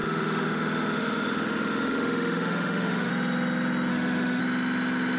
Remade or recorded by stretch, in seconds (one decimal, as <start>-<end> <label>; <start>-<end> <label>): 0.0-3.1 remade; 3.1-3.9 recorded; 3.9-4.4 remade; 4.4-5.2 recorded